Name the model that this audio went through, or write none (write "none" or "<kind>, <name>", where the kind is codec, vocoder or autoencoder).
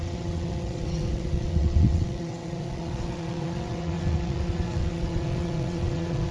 vocoder, WaveNeXt